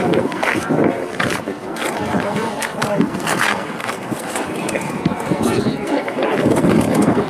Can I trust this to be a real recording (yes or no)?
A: no